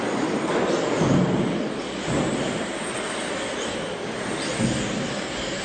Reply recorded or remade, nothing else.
recorded